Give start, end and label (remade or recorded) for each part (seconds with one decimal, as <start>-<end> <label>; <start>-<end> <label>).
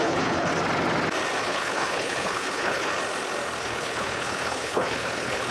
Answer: 0.0-0.5 remade; 0.5-1.4 recorded; 1.4-2.9 remade; 2.9-3.6 recorded; 3.6-5.5 remade